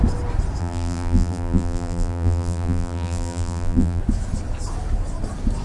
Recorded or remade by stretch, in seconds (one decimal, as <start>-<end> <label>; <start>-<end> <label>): 0.0-0.6 recorded; 0.6-4.0 remade; 4.0-5.6 recorded